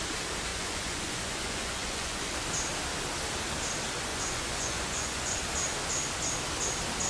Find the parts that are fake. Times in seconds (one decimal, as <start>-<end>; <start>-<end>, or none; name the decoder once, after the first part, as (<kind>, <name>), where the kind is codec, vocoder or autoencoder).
0.5-2.3 (vocoder, Vocos); 4.1-5.4